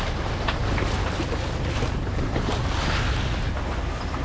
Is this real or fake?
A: real